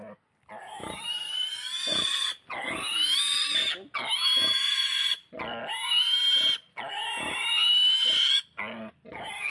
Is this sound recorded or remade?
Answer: recorded